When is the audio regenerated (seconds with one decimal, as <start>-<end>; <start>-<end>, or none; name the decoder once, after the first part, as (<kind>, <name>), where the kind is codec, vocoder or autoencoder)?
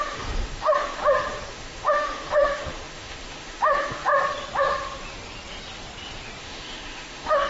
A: 0.0-1.0 (autoencoder, DAC-VAE); 1.5-4.1; 6.4-7.5